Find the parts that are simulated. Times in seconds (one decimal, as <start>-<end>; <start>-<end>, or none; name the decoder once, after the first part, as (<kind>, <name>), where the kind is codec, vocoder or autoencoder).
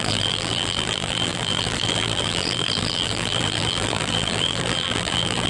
0.0-5.5 (vocoder, BigVGAN v2)